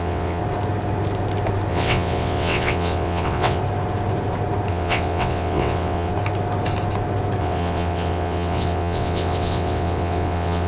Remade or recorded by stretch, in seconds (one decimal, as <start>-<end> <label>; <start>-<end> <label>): 0.0-0.4 remade; 0.4-1.7 recorded; 1.7-3.6 remade; 3.6-4.7 recorded; 4.7-6.1 remade; 6.1-7.4 recorded; 7.4-10.7 remade